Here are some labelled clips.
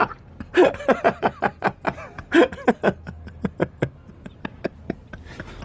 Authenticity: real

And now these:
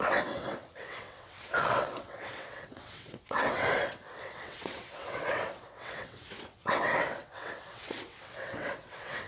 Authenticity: fake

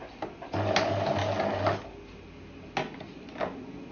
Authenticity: real